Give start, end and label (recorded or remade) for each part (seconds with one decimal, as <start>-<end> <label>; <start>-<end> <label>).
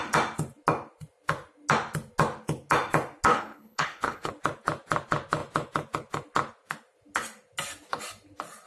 0.0-3.3 recorded; 3.3-4.3 remade; 4.3-8.7 recorded